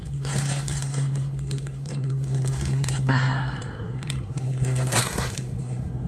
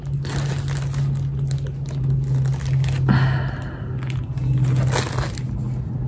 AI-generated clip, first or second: first